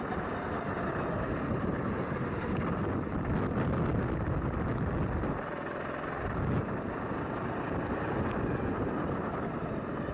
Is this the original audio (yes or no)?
yes